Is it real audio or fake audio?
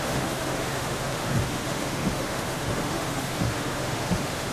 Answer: fake